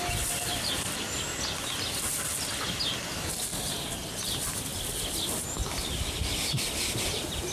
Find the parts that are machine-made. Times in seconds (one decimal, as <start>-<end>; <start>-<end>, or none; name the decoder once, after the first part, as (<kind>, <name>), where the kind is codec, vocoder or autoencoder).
0.0-1.3 (vocoder, BigVGAN v2); 3.7-4.7; 6.1-7.5